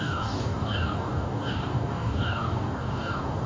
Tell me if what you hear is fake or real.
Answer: fake